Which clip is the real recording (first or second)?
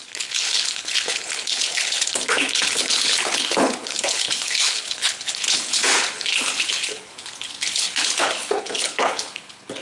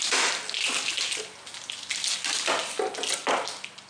second